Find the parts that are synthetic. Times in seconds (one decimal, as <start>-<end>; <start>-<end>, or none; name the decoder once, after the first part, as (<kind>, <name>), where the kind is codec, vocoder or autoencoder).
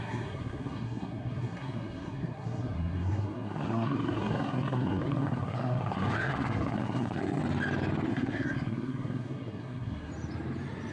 0.0-7.4 (codec, SNAC); 8.1-10.1